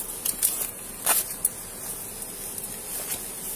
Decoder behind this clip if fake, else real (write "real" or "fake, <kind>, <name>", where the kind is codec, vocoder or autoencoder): real